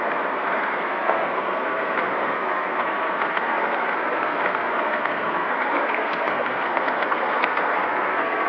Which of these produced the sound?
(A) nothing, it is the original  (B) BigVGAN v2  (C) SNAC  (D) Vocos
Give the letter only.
C